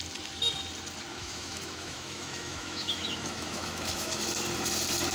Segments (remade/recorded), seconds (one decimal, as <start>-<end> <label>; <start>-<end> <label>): 0.0-1.1 recorded; 1.1-4.2 remade; 4.2-5.1 recorded